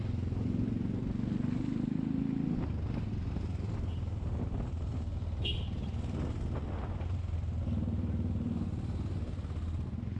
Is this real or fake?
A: real